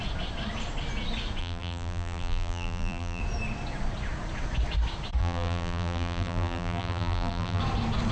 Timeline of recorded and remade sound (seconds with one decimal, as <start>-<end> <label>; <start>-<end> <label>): 0.0-1.4 recorded; 1.4-3.2 remade; 3.2-5.2 recorded; 5.2-7.6 remade; 7.6-8.1 recorded